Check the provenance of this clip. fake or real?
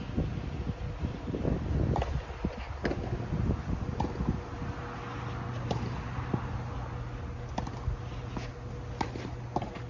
real